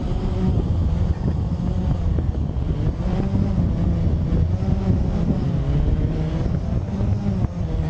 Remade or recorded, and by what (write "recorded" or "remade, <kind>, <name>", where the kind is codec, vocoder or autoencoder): recorded